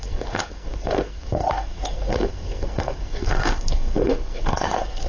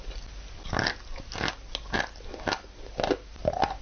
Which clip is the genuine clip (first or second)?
second